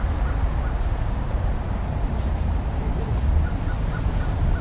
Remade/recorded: recorded